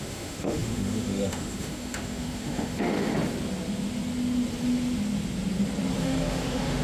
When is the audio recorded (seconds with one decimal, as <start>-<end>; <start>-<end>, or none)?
3.1-6.0